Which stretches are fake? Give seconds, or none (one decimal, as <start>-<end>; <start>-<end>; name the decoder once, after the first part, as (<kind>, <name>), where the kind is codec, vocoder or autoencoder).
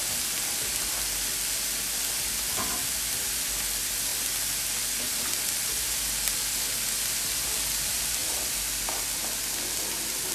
4.1-5.7 (vocoder, BigVGAN v2)